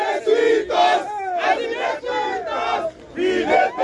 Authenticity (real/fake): real